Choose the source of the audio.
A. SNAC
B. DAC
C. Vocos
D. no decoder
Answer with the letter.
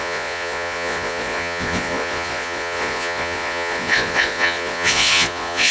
C